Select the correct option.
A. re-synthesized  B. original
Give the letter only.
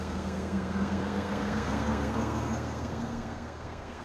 A